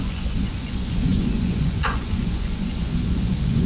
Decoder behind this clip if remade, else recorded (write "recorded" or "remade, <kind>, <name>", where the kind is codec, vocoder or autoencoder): remade, vocoder, Vocos